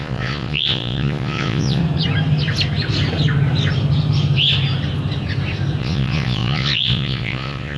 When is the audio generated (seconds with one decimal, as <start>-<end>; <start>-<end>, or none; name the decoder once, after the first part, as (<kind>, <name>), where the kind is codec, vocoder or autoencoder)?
0.0-1.8 (vocoder, Vocos); 5.8-7.8